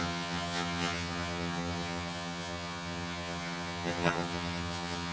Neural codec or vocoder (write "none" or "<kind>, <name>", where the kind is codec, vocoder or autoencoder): vocoder, HiFi-GAN